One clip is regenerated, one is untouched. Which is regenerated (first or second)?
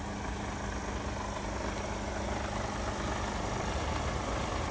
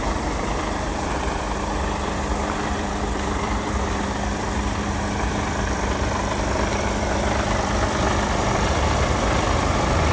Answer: second